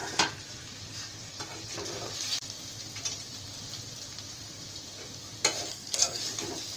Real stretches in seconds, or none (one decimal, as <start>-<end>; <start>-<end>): 0.0-5.7; 6.2-6.8